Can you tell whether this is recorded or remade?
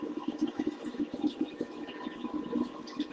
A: remade